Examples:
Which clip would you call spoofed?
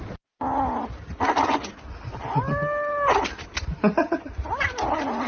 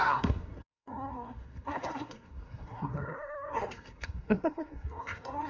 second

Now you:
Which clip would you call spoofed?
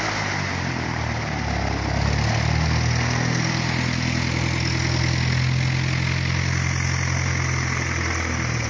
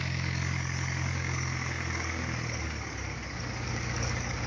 second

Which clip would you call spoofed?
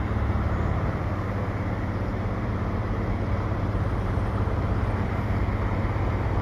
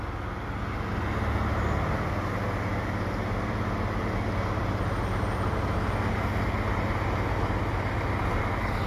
first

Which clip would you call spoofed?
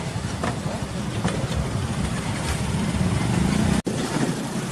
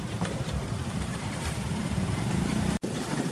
second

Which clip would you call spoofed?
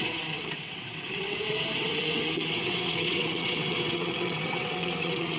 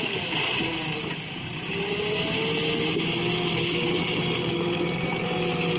first